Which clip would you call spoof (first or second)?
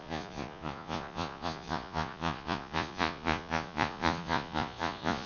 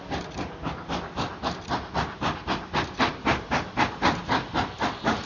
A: first